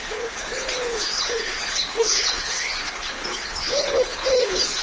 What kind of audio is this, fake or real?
fake